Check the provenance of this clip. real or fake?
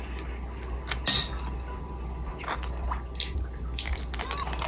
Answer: real